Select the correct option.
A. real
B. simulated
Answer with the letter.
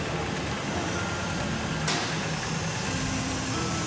A